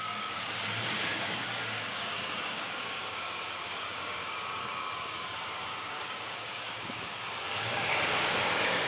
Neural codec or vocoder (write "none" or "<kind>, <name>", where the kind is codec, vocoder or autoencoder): codec, DAC